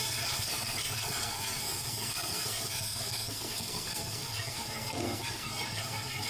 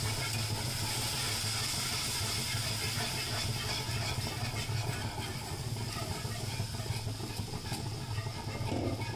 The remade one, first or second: first